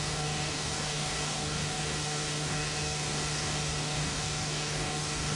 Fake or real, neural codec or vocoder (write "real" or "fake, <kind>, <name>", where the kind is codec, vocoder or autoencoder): fake, codec, DAC